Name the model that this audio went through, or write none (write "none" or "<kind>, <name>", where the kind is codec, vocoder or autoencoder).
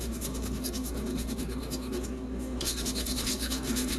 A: codec, DAC